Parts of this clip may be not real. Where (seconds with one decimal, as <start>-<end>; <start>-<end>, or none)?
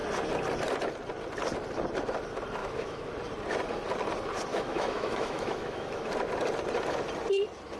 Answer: 2.6-3.1; 4.5-6.1